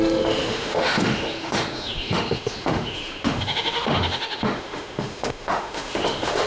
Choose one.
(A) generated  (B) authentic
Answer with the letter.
A